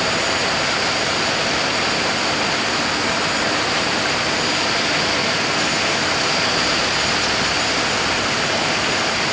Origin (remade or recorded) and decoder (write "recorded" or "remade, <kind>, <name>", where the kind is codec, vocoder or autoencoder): recorded